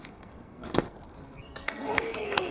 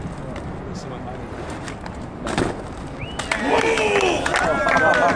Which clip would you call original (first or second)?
second